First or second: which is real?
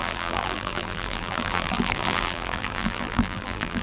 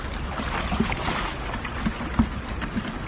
second